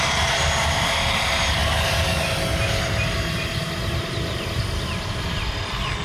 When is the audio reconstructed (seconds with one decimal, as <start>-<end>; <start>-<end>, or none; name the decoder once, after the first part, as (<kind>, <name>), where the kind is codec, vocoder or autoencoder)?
1.6-2.2 (codec, DAC)